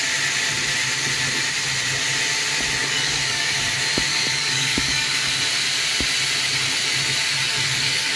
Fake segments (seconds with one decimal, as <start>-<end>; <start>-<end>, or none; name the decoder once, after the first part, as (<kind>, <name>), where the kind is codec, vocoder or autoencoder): 2.8-3.5 (codec, DAC); 4.1-5.3; 7.3-8.2